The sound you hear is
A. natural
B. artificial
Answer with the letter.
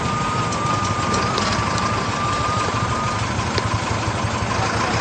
A